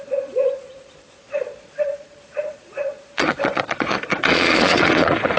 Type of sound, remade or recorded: remade